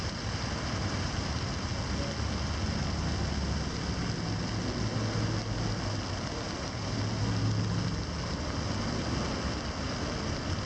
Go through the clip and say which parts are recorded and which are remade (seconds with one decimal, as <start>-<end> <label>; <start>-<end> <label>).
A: 0.0-10.7 recorded